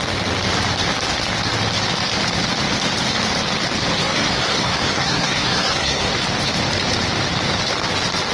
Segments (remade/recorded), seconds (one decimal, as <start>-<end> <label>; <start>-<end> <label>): 0.0-4.0 recorded; 4.0-6.1 remade; 6.1-8.3 recorded

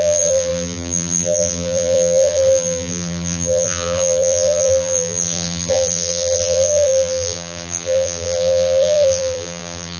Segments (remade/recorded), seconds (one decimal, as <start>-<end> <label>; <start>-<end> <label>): 0.0-10.0 remade